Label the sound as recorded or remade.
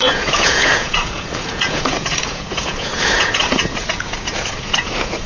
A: remade